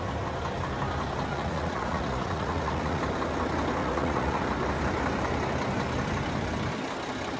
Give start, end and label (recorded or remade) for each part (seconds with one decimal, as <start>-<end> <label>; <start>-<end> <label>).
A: 0.0-1.3 recorded; 1.3-3.0 remade; 3.0-3.8 recorded; 3.8-4.4 remade; 4.4-7.4 recorded